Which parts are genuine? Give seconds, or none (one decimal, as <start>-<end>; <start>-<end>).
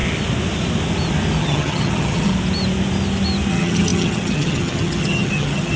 0.0-1.4; 2.3-3.5